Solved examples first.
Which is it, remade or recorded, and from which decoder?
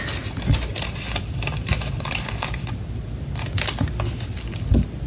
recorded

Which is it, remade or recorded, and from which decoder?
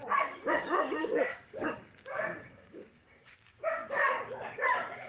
remade, codec, DAC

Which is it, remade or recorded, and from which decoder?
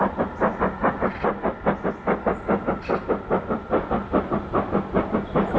recorded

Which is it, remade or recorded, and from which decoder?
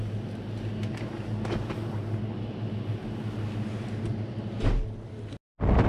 recorded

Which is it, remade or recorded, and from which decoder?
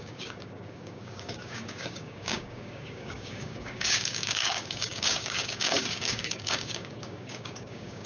remade, codec, DAC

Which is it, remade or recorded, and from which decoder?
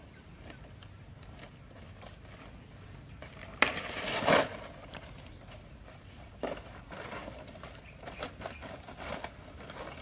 recorded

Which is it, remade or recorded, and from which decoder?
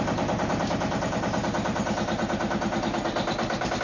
recorded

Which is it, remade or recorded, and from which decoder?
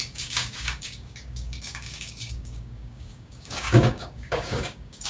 remade, codec, DAC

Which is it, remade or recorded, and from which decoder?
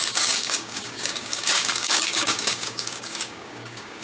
remade, codec, DAC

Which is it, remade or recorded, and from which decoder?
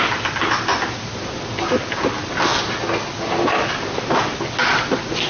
recorded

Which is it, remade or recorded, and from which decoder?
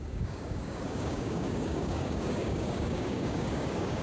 remade, codec, DAC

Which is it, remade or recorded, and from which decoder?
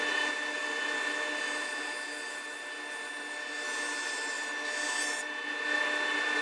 recorded